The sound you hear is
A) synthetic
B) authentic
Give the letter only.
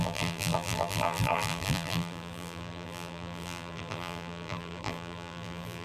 A